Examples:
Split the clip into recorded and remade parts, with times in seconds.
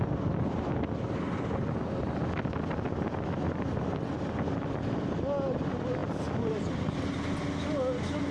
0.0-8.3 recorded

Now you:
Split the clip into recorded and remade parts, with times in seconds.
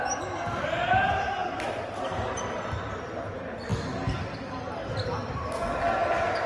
0.0-6.5 recorded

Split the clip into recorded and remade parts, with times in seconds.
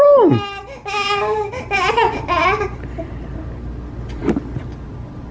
0.0-0.8 recorded; 0.8-1.5 remade; 1.5-5.3 recorded